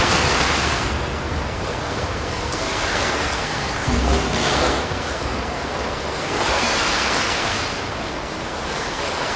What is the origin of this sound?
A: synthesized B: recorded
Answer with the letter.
A